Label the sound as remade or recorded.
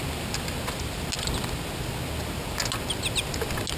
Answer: recorded